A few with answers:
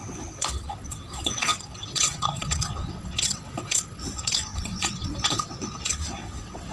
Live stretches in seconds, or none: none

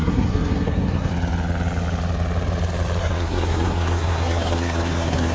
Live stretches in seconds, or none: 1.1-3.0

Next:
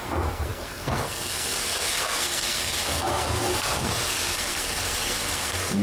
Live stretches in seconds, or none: none

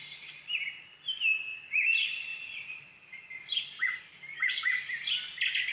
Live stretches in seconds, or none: 0.0-2.3; 4.5-5.7

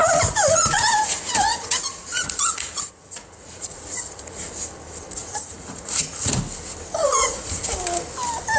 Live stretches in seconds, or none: 4.5-5.2; 6.4-7.0; 7.7-8.6

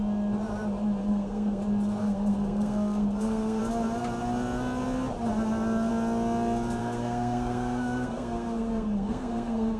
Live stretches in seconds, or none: 0.0-1.0; 1.6-2.0; 3.6-6.8